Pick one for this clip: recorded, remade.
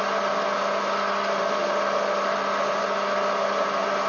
recorded